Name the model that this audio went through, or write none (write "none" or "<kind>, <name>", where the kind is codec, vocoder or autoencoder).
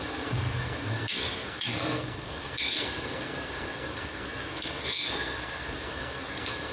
codec, SNAC